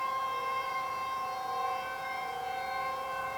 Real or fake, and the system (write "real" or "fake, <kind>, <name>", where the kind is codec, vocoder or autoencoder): fake, vocoder, Vocos